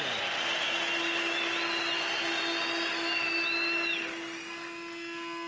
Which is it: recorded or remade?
recorded